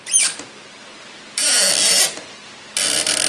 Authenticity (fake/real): real